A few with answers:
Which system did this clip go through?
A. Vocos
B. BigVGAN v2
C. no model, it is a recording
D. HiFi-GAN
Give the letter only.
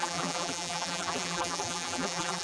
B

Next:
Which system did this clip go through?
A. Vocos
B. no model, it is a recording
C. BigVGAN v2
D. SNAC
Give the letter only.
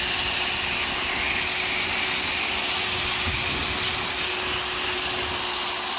B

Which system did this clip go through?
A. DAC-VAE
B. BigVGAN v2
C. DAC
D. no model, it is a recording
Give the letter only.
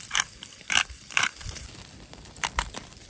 B